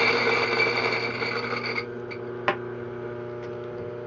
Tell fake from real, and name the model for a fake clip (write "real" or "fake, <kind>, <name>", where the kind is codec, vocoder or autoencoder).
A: real